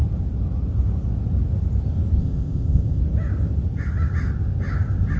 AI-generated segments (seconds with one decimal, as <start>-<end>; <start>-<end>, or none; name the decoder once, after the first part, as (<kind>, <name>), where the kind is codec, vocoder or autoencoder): 2.2-3.0 (codec, ZipCodec)

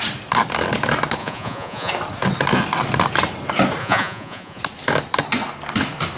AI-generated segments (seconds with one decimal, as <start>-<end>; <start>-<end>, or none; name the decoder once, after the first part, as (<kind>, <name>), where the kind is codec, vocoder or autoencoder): 1.2-1.9 (vocoder, Vocos); 3.8-4.6

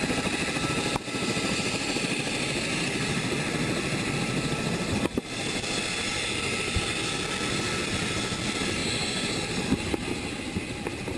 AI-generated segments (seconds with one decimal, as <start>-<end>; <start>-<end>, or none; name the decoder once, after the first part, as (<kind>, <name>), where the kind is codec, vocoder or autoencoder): 8.8-9.3 (vocoder, Vocos)

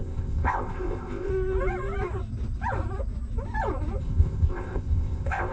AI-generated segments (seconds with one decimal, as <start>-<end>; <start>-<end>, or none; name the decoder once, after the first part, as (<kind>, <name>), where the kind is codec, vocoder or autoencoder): 0.0-1.3 (codec, ZipCodec); 4.0-5.5